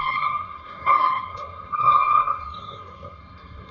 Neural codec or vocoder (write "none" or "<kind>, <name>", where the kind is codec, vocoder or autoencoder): codec, SNAC